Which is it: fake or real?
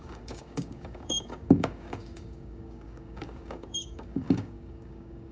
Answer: fake